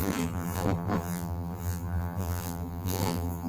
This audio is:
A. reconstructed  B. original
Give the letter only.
A